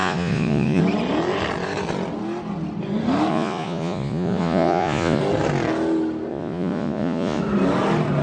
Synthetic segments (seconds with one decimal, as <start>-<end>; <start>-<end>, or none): 0.0-0.8; 3.3-5.2; 6.3-7.4